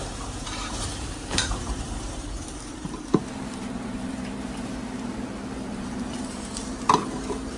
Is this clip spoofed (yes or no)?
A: yes